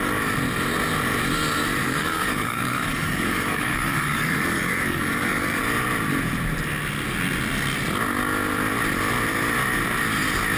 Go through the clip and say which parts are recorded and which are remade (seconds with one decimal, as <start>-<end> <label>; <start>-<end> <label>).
0.0-1.8 recorded; 1.8-5.6 remade; 5.6-10.6 recorded